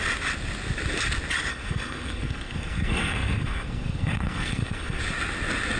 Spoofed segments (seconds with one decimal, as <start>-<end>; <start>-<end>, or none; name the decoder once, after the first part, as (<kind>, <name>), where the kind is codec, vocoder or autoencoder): 1.5-5.0 (codec, SNAC)